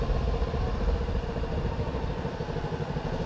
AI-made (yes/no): no